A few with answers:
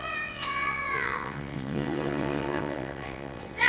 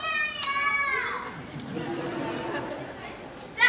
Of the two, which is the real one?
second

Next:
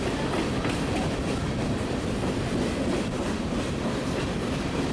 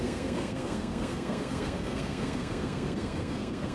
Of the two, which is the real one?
first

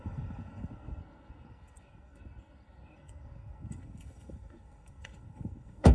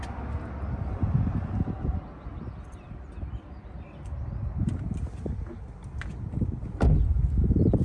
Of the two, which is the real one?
second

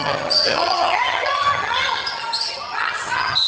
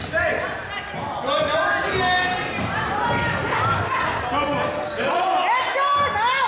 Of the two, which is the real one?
second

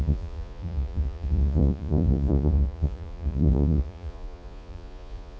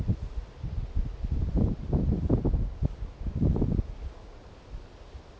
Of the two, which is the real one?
second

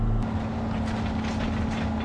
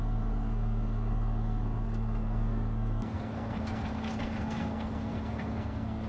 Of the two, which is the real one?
first